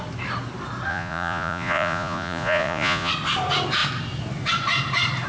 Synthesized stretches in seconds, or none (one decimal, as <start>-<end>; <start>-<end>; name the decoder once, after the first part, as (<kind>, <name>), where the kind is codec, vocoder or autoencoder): 0.9-3.1 (vocoder, Vocos)